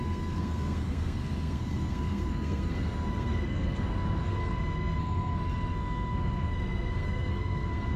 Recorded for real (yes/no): no